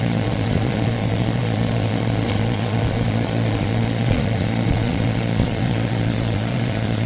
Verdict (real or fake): fake